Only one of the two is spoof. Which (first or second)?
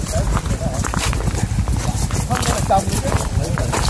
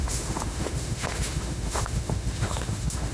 second